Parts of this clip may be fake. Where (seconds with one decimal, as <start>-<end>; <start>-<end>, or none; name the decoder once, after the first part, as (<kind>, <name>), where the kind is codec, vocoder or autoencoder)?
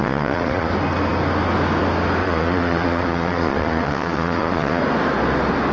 0.0-0.7 (vocoder, Vocos); 2.2-4.8